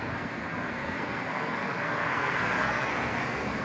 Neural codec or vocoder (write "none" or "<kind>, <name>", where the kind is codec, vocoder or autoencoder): codec, SNAC